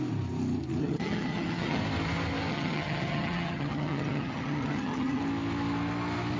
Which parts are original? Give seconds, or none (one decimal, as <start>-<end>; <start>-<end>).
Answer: 0.0-0.8; 1.8-2.5; 5.2-6.4